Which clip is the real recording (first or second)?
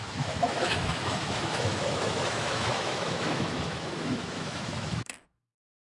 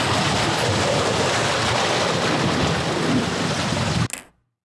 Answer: second